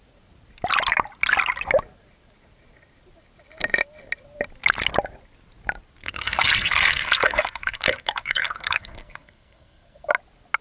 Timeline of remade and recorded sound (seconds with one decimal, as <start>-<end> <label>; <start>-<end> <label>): 0.0-6.0 recorded; 6.0-10.1 remade; 10.1-10.6 recorded